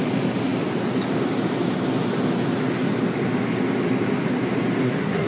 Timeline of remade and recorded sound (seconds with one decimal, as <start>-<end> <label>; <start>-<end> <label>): 0.0-4.8 recorded; 4.8-5.3 remade